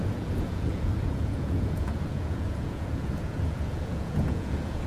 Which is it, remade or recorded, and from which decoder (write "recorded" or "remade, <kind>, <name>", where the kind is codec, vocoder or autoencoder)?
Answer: remade, vocoder, Vocos